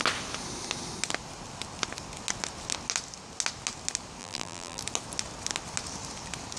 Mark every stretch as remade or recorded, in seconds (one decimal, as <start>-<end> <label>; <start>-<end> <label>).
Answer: 0.0-4.2 recorded; 4.2-4.8 remade; 4.8-6.6 recorded